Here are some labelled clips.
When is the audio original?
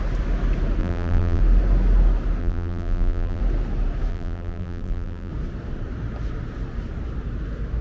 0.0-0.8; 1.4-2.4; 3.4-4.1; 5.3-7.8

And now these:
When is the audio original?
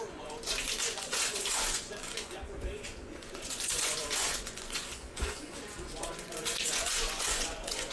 none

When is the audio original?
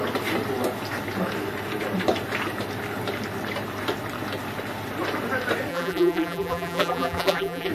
0.0-5.7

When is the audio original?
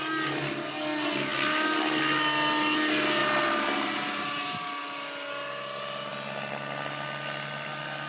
0.0-8.1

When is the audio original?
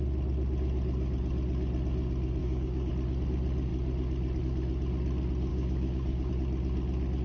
0.0-2.4; 2.9-5.5; 6.3-7.2